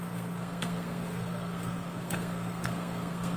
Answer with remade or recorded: remade